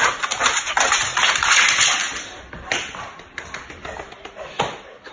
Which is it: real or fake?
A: real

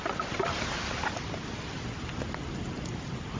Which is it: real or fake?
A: real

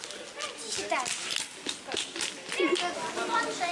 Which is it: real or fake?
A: real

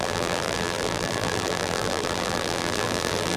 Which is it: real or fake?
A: fake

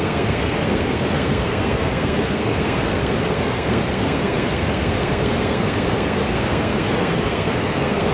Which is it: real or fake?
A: fake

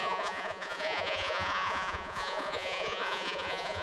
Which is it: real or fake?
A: fake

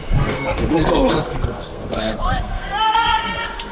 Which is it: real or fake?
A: fake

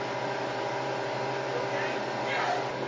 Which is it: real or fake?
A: real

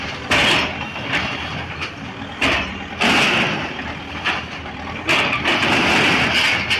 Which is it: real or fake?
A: real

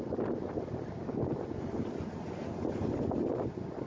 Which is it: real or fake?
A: real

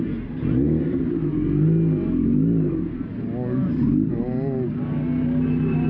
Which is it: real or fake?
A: real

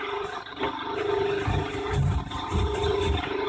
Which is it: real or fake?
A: fake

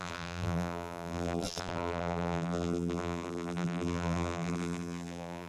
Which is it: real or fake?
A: fake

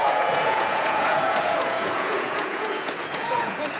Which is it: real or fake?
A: fake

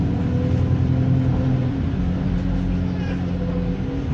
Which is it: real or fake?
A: real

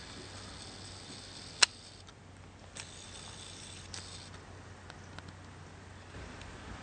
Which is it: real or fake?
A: real